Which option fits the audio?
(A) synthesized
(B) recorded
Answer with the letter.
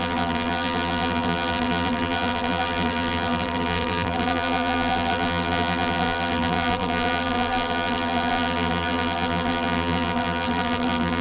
A